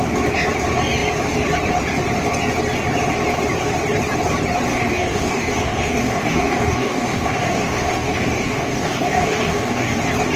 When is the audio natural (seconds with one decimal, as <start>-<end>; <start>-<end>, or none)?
0.0-4.7; 10.0-10.4